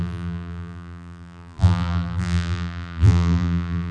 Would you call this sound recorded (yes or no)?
no